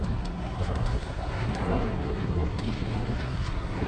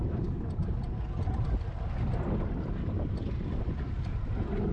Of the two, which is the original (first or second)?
second